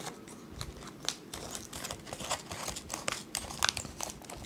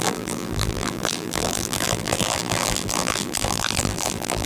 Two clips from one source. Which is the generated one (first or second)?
second